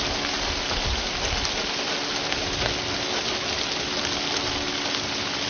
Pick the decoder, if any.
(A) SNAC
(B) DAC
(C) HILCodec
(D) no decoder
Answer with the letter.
D